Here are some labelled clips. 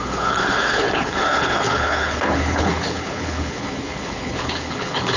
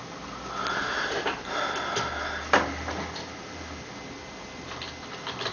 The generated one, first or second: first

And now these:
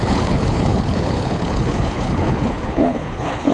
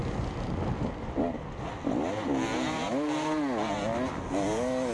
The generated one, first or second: first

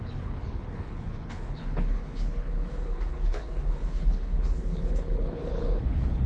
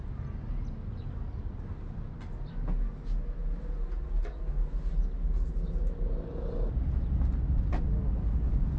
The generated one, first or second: first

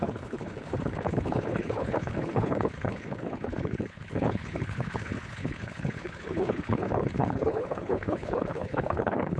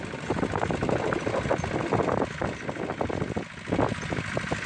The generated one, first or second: first